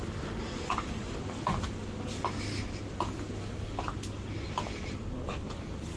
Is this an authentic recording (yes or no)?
yes